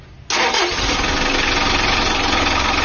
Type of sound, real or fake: real